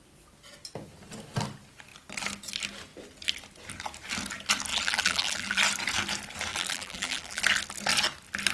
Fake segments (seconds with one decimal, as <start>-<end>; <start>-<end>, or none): 4.7-5.6; 6.5-7.4

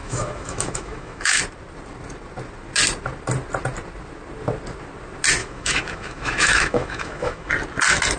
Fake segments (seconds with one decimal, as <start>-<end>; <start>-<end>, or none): 0.0-1.4; 5.4-7.5